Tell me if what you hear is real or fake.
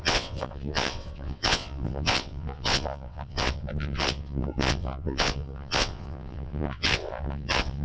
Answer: fake